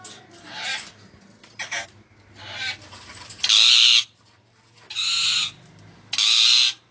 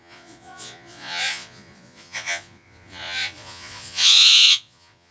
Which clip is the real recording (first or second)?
first